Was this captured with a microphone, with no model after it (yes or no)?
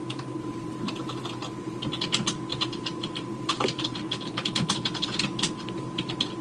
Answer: yes